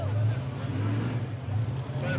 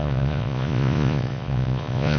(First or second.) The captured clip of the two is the first